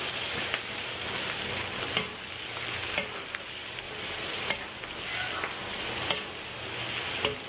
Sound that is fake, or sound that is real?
real